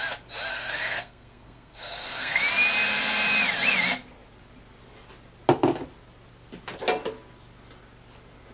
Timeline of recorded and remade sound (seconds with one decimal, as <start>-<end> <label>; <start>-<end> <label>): 0.0-0.5 recorded; 0.5-2.4 remade; 2.4-8.5 recorded